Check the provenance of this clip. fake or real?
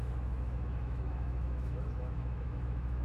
fake